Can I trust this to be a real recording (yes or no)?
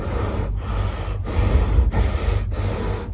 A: yes